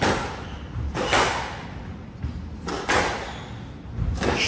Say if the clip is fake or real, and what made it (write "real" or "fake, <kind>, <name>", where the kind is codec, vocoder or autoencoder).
real